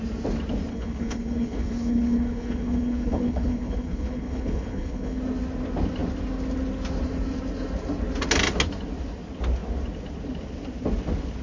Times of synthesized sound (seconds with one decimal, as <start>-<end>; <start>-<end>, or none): 0.7-5.2